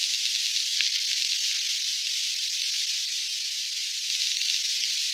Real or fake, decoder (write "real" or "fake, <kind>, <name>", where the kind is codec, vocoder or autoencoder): real